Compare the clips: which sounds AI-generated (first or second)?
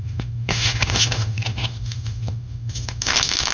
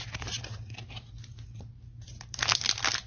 first